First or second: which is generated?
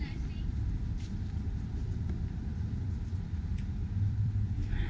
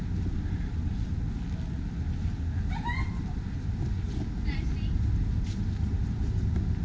first